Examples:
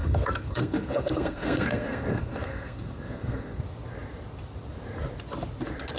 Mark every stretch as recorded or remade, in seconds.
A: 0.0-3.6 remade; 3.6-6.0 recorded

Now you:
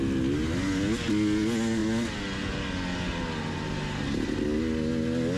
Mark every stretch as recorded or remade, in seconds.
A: 0.0-5.4 recorded

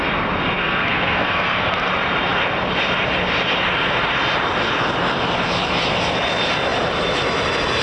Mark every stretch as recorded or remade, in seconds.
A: 0.0-0.6 recorded; 0.6-1.9 remade; 1.9-7.8 recorded